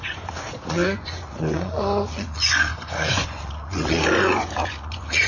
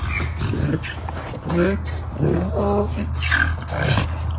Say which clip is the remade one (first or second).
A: first